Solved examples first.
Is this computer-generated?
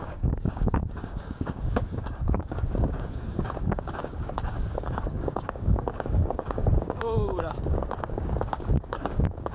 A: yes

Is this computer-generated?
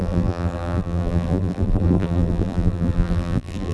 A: yes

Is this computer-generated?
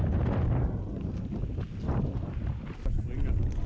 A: no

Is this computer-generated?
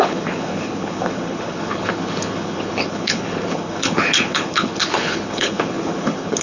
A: yes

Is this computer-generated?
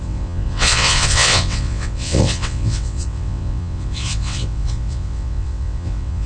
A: yes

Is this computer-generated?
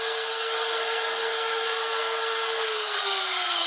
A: yes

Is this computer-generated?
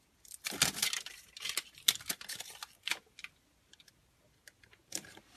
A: no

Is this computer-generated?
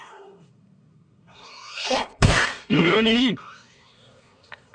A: yes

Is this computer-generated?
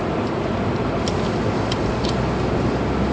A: no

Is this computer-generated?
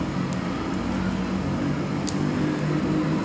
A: no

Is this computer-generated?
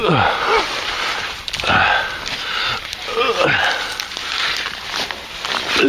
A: no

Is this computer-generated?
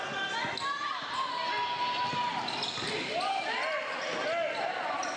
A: no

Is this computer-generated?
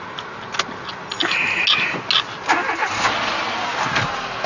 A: no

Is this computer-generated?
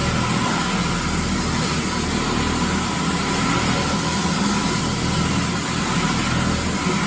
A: no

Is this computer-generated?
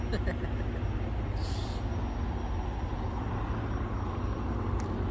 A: no